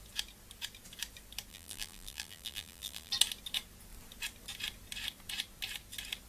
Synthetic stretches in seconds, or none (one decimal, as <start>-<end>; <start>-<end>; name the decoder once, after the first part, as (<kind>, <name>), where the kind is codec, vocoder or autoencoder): 1.5-3.1 (vocoder, BigVGAN v2)